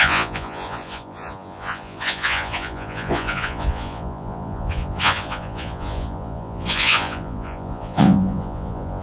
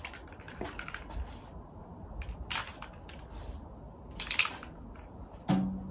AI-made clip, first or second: first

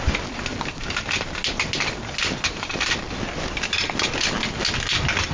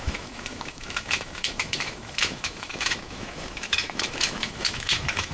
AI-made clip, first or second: second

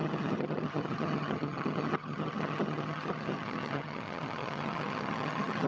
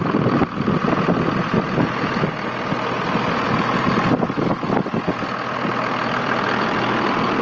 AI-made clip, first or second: first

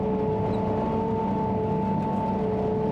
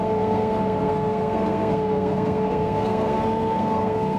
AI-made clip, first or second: second